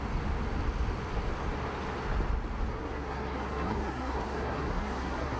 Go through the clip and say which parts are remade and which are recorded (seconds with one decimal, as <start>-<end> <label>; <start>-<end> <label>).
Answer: 0.0-2.7 recorded; 2.7-5.4 remade